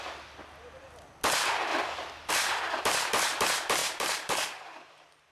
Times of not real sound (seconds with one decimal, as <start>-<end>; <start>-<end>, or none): 3.8-5.3